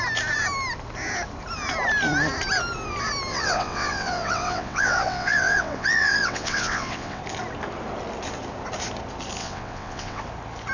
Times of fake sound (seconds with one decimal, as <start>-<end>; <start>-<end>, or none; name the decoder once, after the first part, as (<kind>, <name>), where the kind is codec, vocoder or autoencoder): 3.3-7.2 (vocoder, WaveNeXt); 9.4-10.2